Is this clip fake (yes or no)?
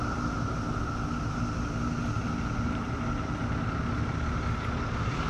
no